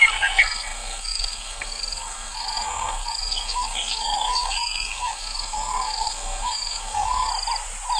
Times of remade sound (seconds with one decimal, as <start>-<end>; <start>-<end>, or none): 0.0-7.3